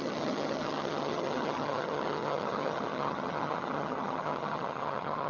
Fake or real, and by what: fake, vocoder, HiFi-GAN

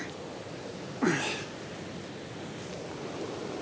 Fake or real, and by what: real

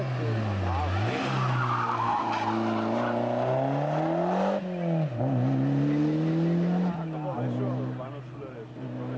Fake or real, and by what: real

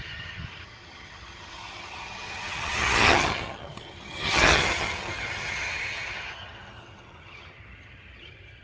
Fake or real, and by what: fake, vocoder, HiFi-GAN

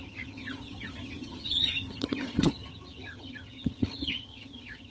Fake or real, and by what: fake, vocoder, HiFi-GAN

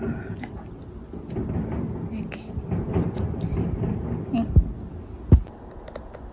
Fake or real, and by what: real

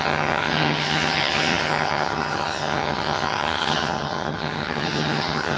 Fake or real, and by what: fake, vocoder, HiFi-GAN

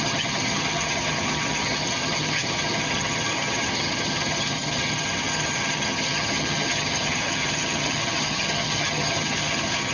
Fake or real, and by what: fake, vocoder, HiFi-GAN